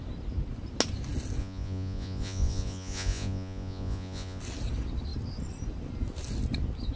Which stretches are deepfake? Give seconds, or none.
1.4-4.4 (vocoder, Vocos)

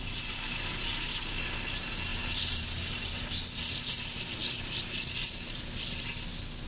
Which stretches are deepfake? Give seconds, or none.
2.1-3.4 (vocoder, BigVGAN v2)

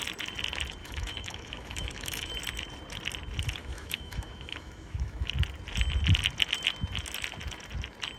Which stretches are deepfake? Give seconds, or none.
0.8-2.3 (autoencoder, DAC-VAE); 3.6-5.3

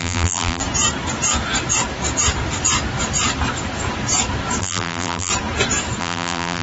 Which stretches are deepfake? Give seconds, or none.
0.0-0.6 (vocoder, BigVGAN v2); 4.6-5.3; 6.0-6.6